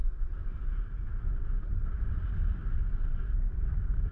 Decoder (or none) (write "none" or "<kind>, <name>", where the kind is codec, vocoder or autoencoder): none